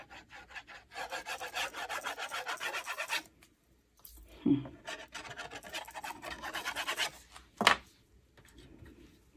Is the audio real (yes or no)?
yes